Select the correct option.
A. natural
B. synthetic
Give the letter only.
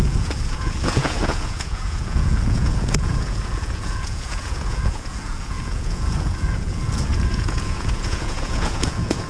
B